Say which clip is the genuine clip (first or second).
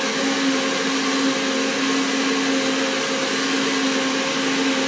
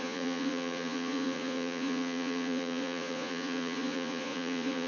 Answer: first